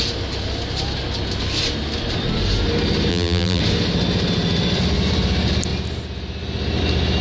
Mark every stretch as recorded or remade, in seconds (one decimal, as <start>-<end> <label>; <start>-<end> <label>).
0.0-3.1 recorded; 3.1-3.6 remade; 3.6-7.2 recorded